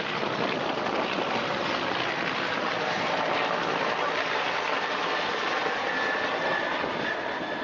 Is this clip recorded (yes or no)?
yes